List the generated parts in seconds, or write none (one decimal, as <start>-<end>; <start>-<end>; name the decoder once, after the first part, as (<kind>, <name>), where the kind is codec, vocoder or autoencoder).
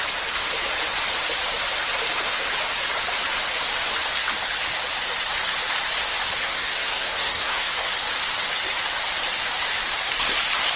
6.4-7.9 (codec, SNAC)